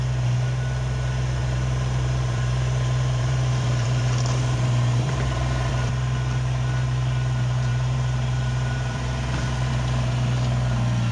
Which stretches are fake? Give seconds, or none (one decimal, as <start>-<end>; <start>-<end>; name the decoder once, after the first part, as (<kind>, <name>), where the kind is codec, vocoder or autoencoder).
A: 1.4-5.7 (vocoder, BigVGAN v2); 7.7-9.7